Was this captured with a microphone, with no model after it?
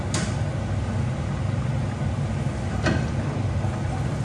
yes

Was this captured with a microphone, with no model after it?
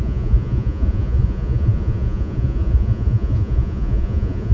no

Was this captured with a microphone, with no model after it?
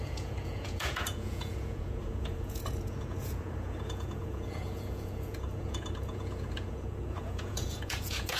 no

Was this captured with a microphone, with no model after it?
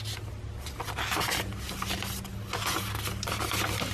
yes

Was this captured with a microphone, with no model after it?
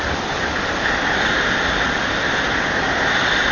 yes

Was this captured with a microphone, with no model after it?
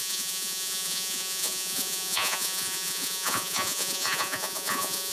no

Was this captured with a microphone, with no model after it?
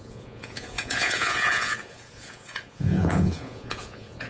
no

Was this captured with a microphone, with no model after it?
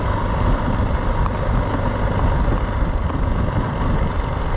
yes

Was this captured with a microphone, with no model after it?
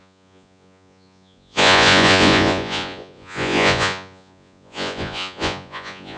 no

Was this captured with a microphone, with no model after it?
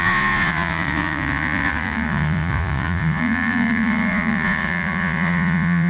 no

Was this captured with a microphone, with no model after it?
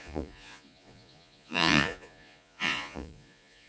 no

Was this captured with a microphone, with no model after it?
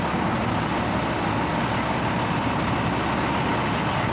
yes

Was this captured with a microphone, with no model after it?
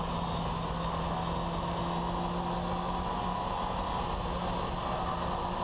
yes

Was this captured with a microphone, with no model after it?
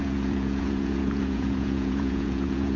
no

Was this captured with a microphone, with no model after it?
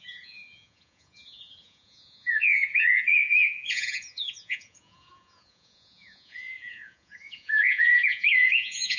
no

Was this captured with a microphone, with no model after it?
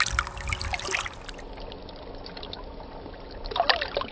yes